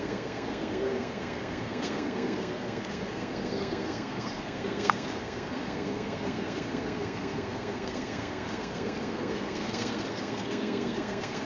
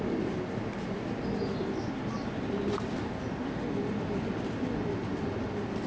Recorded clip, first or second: second